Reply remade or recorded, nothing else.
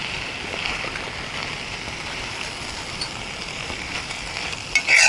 recorded